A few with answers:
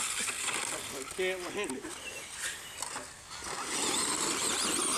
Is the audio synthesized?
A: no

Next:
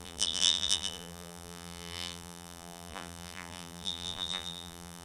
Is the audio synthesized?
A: yes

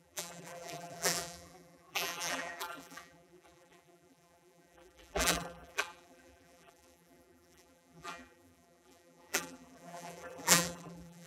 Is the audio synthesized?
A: yes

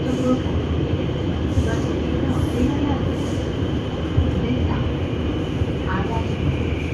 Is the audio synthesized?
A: yes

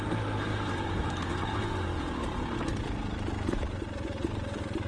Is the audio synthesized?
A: yes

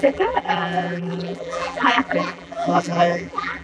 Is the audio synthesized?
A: yes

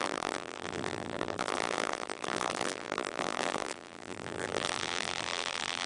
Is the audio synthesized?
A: yes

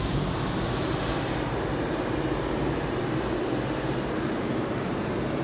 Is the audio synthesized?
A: yes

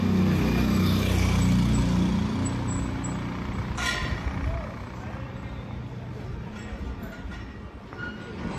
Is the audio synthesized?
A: no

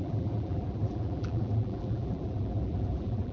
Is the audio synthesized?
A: yes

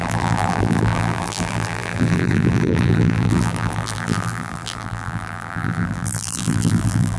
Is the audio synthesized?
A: yes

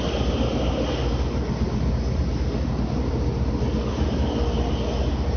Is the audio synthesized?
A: no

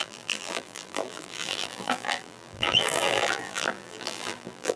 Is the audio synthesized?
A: yes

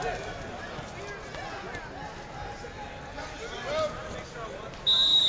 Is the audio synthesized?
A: no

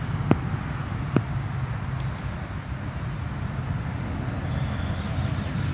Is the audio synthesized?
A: no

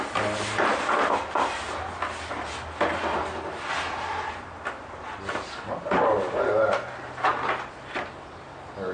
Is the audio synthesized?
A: no